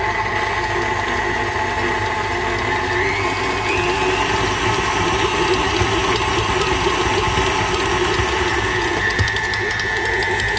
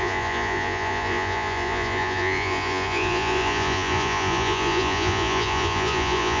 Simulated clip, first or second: second